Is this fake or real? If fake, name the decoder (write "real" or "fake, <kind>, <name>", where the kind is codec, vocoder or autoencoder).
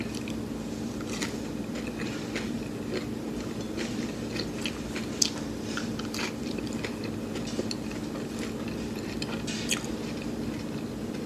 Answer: real